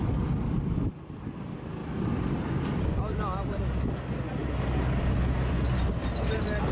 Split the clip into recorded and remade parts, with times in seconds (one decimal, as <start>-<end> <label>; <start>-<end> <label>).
0.0-1.8 recorded; 1.8-2.9 remade; 2.9-6.7 recorded